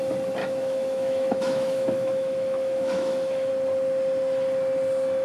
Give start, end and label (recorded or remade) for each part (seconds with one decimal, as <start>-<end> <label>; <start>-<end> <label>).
0.0-0.4 recorded; 0.4-3.5 remade; 3.5-5.2 recorded